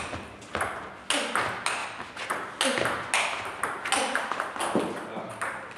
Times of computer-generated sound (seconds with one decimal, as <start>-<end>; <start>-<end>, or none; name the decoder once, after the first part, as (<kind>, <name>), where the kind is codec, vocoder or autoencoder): none